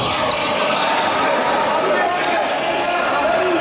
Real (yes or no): yes